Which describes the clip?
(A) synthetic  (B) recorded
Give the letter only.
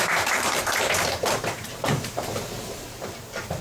A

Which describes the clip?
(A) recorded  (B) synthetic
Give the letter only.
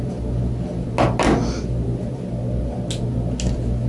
A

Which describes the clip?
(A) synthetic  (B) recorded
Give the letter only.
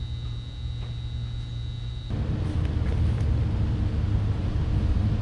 B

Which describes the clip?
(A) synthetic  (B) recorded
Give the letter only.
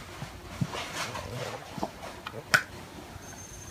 B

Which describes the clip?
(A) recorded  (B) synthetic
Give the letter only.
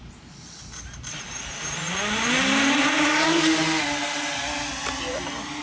A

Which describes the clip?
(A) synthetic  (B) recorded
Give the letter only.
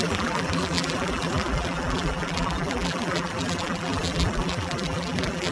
A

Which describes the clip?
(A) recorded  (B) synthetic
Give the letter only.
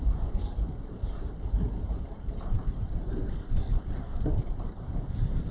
B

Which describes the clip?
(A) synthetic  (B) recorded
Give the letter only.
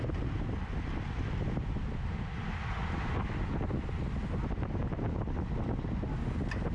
B